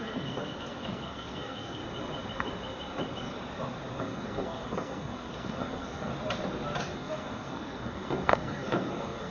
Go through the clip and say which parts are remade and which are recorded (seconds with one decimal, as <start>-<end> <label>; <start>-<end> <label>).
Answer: 0.0-1.8 remade; 1.8-4.0 recorded; 4.0-6.1 remade; 6.1-6.8 recorded; 6.8-9.3 remade